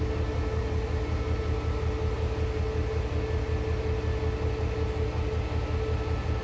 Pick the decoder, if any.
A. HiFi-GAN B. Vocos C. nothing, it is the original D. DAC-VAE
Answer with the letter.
C